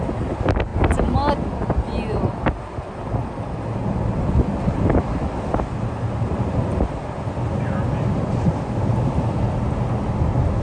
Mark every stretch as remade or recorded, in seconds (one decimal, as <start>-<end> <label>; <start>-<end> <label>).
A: 0.0-10.6 recorded